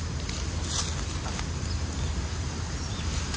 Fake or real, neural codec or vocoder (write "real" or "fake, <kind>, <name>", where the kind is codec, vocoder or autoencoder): real